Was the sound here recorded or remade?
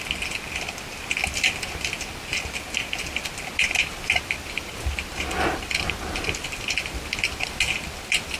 recorded